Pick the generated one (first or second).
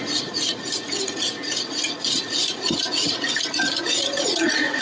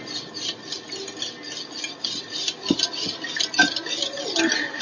first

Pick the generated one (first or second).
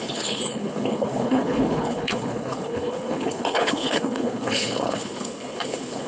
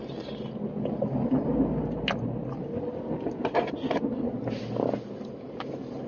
first